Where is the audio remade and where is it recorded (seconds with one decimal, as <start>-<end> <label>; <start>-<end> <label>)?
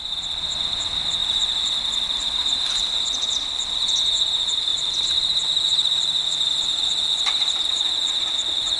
0.0-1.2 recorded; 1.2-3.9 remade; 3.9-4.7 recorded; 4.7-7.7 remade; 7.7-8.8 recorded